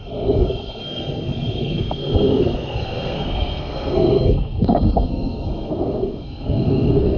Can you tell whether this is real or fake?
fake